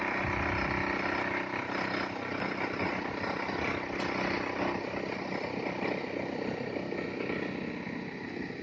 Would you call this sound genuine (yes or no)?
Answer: yes